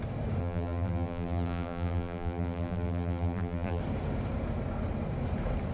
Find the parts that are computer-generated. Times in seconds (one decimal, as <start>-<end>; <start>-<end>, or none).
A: 0.4-3.8